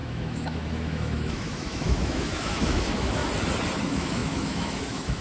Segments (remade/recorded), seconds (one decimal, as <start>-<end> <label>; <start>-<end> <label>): 0.0-3.2 remade; 3.2-3.8 recorded; 3.8-5.2 remade